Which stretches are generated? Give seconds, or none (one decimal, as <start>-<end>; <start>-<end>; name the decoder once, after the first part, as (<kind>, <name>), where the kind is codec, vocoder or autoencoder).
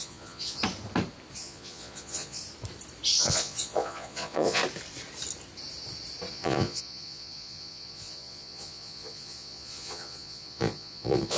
0.0-0.6 (vocoder, Vocos); 1.4-2.4; 3.2-4.6; 6.3-11.4